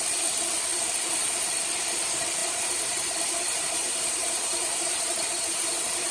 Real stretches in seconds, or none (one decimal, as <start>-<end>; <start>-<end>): 0.0-2.4